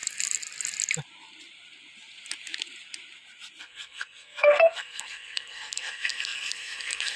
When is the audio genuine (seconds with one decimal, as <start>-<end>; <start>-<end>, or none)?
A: 0.0-3.6